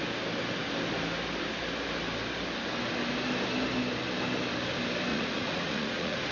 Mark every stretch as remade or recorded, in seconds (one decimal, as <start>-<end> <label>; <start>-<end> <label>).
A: 0.0-5.1 recorded; 5.1-6.3 remade

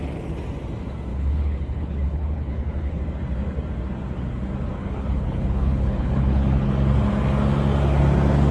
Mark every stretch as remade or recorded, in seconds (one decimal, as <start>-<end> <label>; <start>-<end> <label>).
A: 0.0-1.1 recorded; 1.1-3.0 remade; 3.0-4.8 recorded; 4.8-6.7 remade; 6.7-8.5 recorded

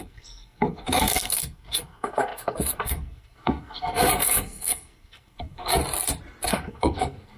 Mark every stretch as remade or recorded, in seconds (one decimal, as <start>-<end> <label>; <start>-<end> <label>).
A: 0.0-5.8 remade; 5.8-6.5 recorded; 6.5-7.4 remade